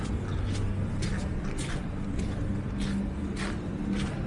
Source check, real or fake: real